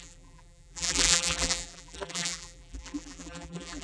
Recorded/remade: remade